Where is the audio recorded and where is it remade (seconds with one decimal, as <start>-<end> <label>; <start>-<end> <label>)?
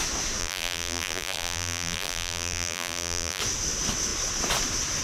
0.0-0.4 recorded; 0.4-3.4 remade; 3.4-5.0 recorded